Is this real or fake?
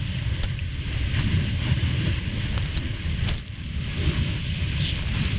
fake